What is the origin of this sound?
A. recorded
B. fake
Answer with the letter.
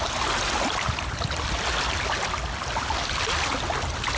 A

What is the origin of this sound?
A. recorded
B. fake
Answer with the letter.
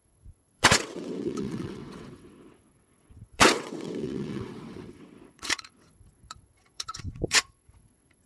B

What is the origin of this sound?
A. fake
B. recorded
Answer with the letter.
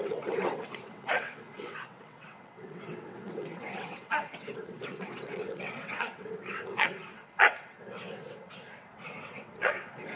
A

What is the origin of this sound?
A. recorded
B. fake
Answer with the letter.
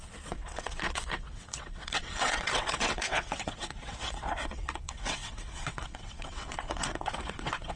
B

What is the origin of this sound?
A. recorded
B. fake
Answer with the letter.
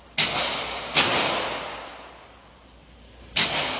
A